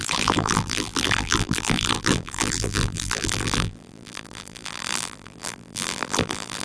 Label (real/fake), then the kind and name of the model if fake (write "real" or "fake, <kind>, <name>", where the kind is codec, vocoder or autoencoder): fake, vocoder, BigVGAN v2